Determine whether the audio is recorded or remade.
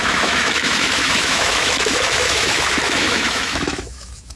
remade